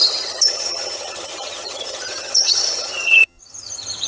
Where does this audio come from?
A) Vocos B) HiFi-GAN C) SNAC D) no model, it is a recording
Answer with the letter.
B